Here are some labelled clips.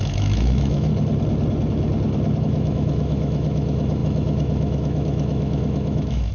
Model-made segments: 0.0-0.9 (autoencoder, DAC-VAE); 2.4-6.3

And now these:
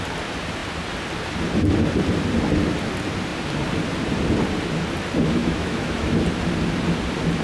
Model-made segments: 5.4-6.2 (autoencoder, DAC-VAE)

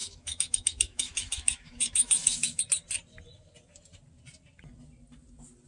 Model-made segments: 0.0-2.6 (autoencoder, DAC-VAE)

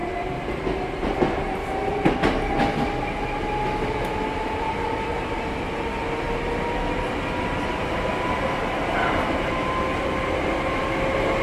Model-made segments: none

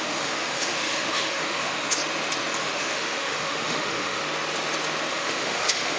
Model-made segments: 0.0-2.0 (autoencoder, DAC-VAE); 2.6-4.2; 5.1-6.0